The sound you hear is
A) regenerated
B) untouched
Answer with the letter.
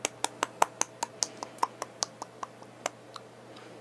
B